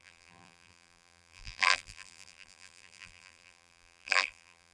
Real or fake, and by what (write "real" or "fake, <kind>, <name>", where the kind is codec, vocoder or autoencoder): fake, vocoder, BigVGAN v2